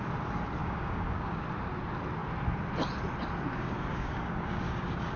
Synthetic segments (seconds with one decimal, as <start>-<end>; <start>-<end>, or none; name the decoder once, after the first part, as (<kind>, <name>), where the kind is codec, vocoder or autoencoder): 0.6-1.4 (codec, DAC); 3.5-5.2